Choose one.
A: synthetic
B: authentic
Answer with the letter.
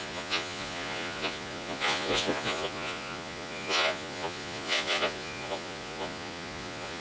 A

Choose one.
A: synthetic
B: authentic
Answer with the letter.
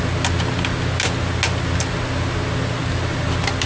B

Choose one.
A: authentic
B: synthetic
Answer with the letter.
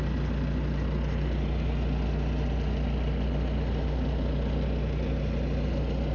A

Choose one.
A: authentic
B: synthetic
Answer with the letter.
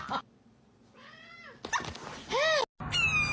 A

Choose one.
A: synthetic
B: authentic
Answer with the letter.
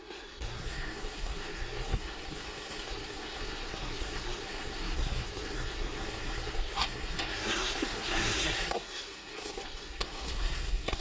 A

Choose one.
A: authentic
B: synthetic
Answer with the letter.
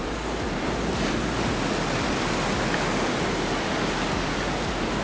A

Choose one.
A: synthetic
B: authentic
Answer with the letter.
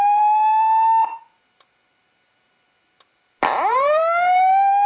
A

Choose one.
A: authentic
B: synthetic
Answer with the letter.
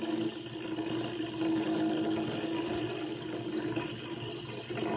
A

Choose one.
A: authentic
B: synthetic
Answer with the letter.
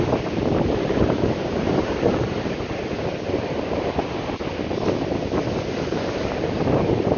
A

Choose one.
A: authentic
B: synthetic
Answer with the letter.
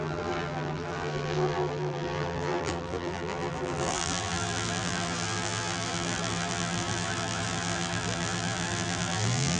B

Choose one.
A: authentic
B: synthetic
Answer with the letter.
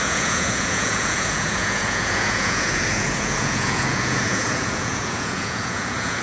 B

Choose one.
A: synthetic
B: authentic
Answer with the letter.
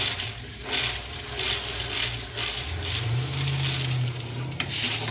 B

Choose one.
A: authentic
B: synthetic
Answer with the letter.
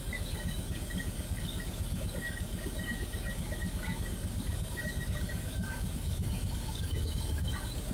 B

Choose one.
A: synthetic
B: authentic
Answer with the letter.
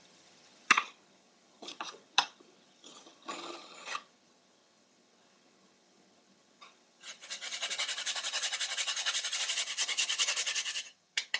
A